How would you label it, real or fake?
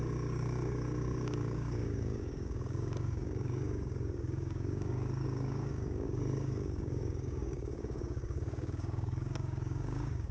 fake